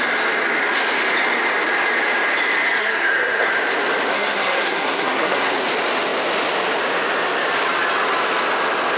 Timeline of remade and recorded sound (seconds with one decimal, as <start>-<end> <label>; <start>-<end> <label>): 0.0-2.8 recorded; 2.8-3.5 remade; 3.5-4.1 recorded; 4.1-5.5 remade; 5.5-9.0 recorded